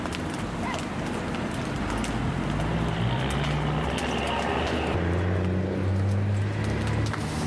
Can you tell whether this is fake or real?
real